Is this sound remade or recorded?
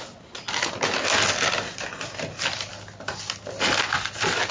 recorded